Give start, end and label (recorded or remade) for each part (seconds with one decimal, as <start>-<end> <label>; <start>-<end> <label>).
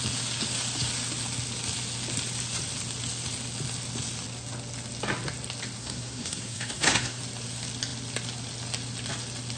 0.0-5.8 recorded; 5.8-7.2 remade; 7.2-9.6 recorded